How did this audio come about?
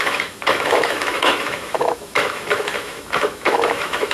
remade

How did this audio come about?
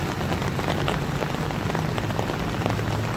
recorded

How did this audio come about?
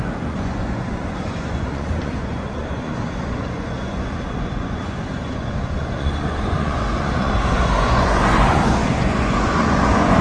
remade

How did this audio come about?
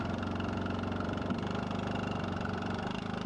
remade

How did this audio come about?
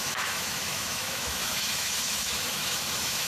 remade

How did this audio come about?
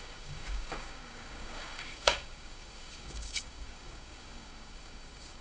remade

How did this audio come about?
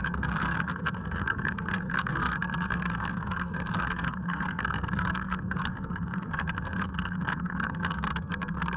remade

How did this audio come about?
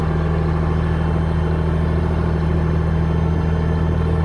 recorded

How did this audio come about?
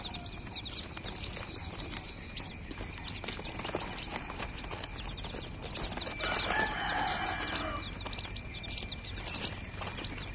recorded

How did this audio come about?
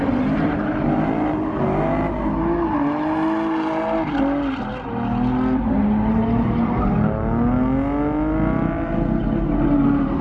recorded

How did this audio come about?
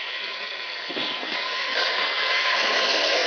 remade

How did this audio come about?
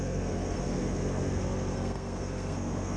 remade